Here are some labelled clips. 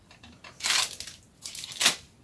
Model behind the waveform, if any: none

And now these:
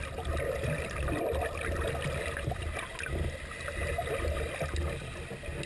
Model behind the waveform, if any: none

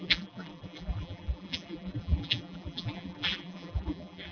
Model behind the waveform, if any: vocoder, BigVGAN v2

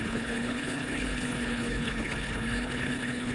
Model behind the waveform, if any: codec, HILCodec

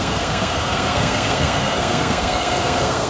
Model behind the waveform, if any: codec, SNAC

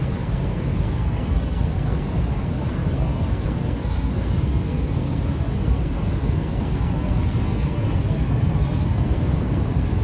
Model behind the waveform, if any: codec, SNAC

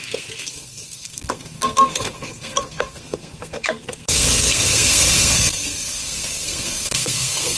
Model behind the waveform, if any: codec, SNAC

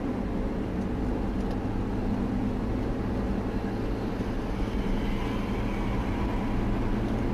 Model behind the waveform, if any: none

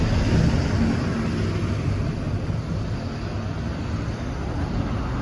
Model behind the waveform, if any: none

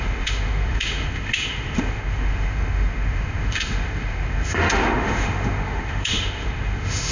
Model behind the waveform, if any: autoencoder, DAC-VAE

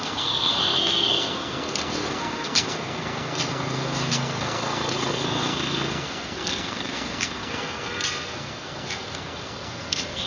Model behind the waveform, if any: codec, SNAC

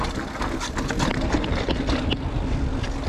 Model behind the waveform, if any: none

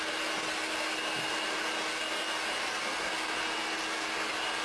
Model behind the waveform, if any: none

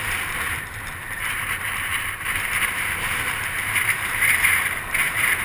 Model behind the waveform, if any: vocoder, BigVGAN v2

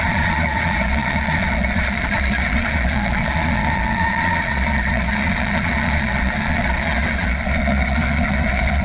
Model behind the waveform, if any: vocoder, Vocos